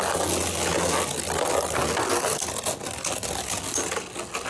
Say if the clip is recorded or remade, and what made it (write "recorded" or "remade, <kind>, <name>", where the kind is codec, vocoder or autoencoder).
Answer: recorded